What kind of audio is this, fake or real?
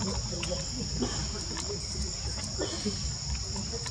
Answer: real